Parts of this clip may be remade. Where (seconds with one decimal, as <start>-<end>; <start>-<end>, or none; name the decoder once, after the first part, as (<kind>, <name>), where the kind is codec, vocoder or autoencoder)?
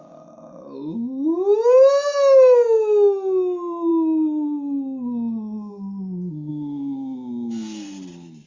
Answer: none